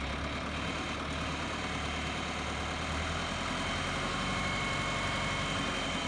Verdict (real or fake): real